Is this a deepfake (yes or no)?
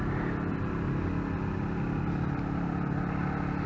no